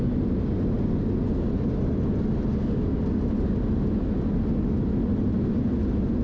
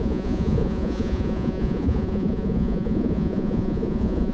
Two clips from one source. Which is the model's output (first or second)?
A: second